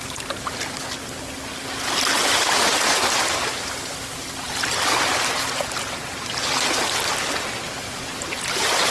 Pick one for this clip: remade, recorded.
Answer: recorded